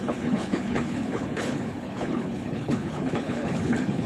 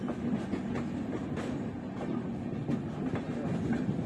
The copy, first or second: first